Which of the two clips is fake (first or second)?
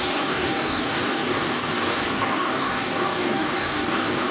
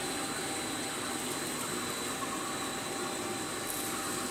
first